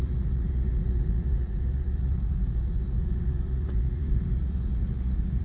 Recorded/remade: remade